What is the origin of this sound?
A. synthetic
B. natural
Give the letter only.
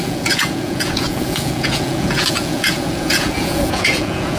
A